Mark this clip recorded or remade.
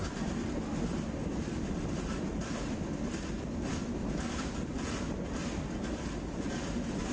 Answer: recorded